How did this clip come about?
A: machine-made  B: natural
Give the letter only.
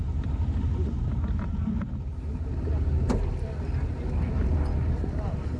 B